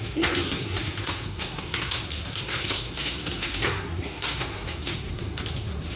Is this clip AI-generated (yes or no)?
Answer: yes